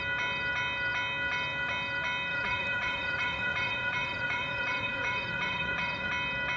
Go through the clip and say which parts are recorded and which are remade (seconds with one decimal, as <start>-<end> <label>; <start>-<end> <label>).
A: 0.0-2.3 recorded; 2.3-6.1 remade; 6.1-6.6 recorded